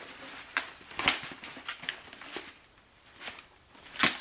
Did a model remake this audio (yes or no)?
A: no